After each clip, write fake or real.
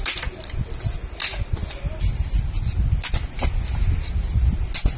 real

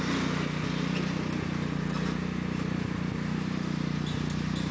real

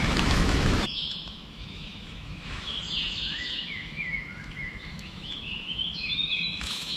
fake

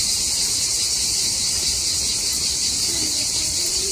fake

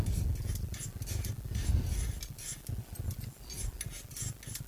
real